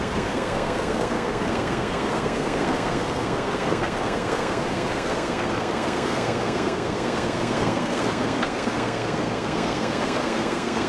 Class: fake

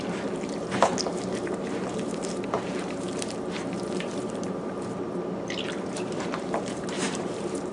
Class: fake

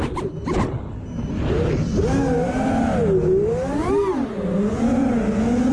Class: real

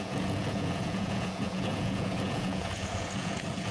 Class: fake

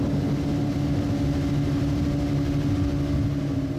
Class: real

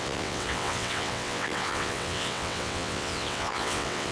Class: fake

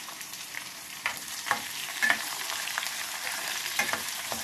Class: fake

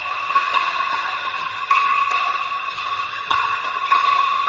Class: fake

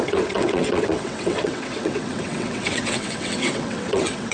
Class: fake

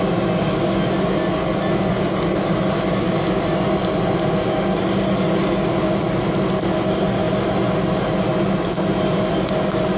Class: real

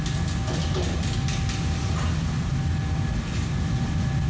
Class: real